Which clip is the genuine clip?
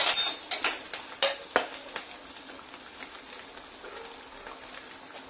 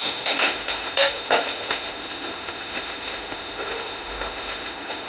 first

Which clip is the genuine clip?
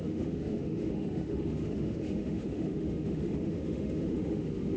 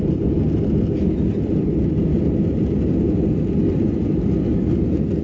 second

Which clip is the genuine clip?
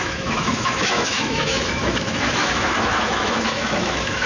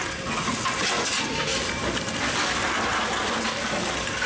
second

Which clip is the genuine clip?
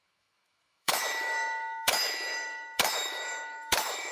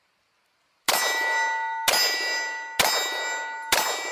second